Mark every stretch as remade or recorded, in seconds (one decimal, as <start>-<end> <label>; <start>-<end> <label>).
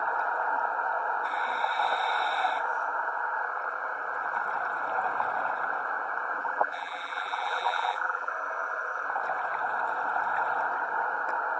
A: 0.0-6.4 recorded; 6.4-8.3 remade; 8.3-11.6 recorded